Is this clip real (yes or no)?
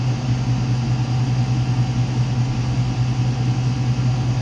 yes